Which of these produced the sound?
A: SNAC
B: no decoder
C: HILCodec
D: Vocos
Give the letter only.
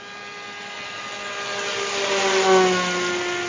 B